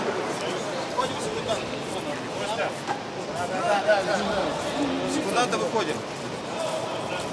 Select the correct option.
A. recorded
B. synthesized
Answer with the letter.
A